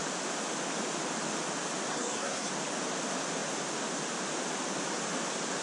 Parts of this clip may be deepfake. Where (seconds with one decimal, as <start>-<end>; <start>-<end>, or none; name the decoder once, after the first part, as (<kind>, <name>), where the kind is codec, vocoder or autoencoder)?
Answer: 1.9-2.5 (codec, SNAC)